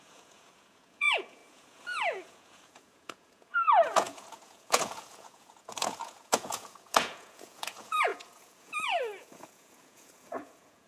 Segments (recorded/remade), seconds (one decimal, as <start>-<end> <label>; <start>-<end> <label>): 0.0-10.9 remade